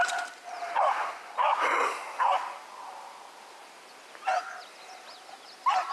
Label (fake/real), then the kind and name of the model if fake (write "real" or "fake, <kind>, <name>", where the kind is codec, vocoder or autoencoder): real